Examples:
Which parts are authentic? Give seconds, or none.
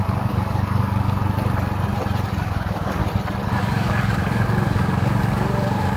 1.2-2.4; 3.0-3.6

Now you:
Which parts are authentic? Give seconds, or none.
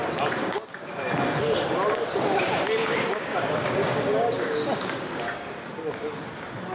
0.0-0.4; 0.9-2.8; 5.5-6.7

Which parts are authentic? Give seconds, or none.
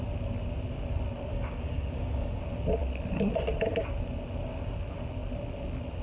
0.0-1.3; 2.4-6.0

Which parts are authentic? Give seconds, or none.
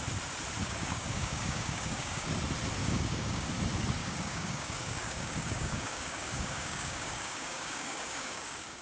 0.0-0.6; 2.3-2.8; 3.5-4.0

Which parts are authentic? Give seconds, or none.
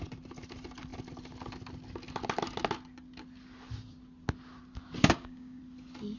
0.0-5.0; 5.6-6.2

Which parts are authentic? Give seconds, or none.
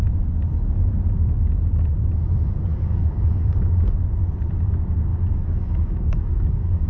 0.0-2.7; 3.8-5.1